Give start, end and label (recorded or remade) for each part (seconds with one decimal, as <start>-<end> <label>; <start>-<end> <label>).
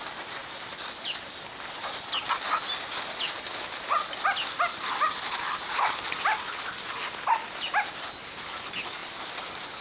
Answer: 0.0-9.8 recorded